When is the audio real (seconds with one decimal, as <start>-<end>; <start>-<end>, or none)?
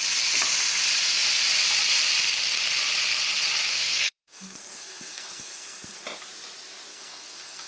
0.0-3.7; 6.0-6.9